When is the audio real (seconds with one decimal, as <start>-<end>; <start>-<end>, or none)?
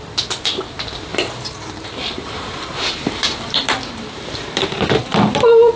0.0-1.1; 4.6-5.8